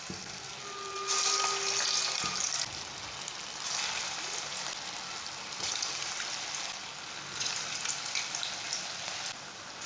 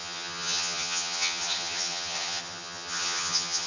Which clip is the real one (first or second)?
first